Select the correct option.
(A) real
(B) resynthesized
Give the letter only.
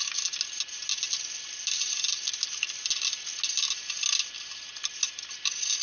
A